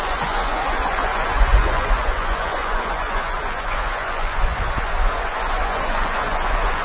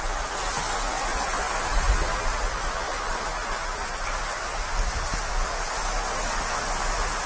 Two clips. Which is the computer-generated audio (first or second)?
first